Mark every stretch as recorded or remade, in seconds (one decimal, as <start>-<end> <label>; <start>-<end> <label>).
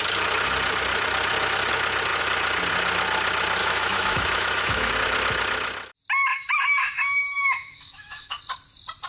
0.0-3.6 recorded; 3.6-4.9 remade; 4.9-6.3 recorded; 6.3-8.4 remade; 8.4-9.1 recorded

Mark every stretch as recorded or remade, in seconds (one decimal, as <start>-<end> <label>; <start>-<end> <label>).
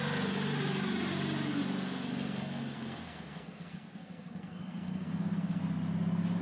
0.0-2.1 recorded; 2.1-5.6 remade; 5.6-6.4 recorded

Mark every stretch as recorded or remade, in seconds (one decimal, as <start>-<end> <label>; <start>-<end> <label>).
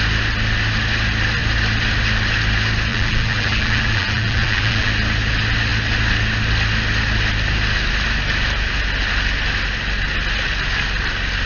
0.0-2.9 recorded; 2.9-4.9 remade; 4.9-11.5 recorded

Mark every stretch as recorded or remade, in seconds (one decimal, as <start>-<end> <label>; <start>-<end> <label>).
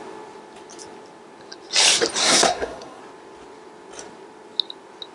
0.0-2.2 recorded; 2.2-3.0 remade; 3.0-5.1 recorded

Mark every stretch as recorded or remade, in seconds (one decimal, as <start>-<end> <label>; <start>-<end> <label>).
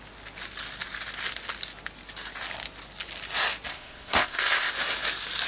0.0-3.7 recorded; 3.7-4.7 remade; 4.7-5.5 recorded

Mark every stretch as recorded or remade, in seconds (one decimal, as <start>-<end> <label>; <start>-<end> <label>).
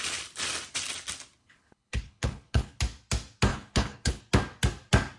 0.0-1.4 recorded; 1.4-2.8 remade; 2.8-3.5 recorded; 3.5-4.2 remade; 4.2-5.2 recorded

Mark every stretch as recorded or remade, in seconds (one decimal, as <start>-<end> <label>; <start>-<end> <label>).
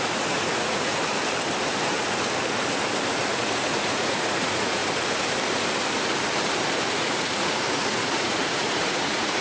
0.0-0.9 remade; 0.9-3.3 recorded; 3.3-4.8 remade; 4.8-7.0 recorded; 7.0-9.4 remade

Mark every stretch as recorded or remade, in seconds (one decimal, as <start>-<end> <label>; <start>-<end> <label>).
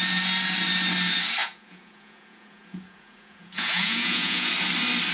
0.0-1.4 recorded; 1.4-4.5 remade; 4.5-5.1 recorded